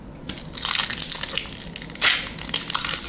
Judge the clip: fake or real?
real